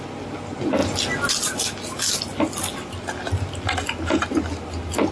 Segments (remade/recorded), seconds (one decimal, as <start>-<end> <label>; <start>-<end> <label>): 0.0-5.1 recorded